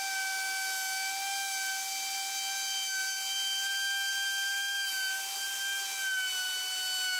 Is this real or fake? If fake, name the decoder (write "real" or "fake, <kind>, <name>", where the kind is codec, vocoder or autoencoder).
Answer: real